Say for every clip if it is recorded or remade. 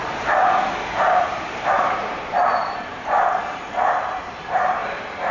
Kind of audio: remade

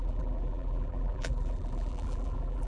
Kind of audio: remade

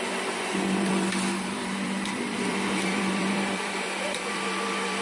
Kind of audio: remade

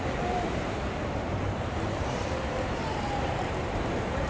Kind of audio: remade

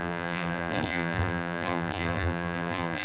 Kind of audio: remade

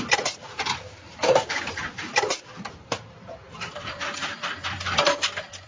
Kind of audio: remade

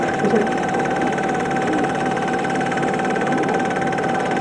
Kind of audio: remade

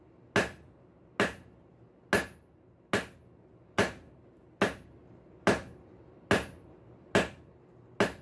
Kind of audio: recorded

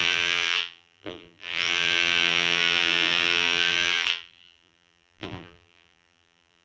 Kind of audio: remade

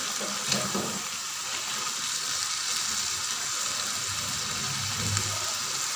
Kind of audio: recorded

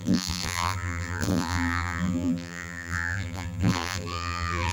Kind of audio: remade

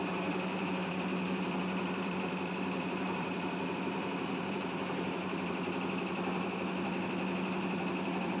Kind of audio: remade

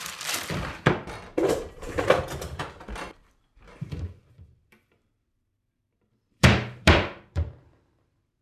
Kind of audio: remade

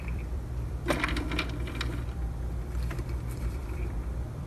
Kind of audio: remade